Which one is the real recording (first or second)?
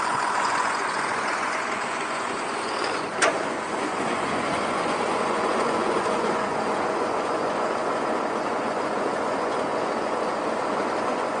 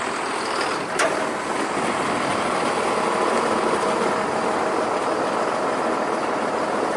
second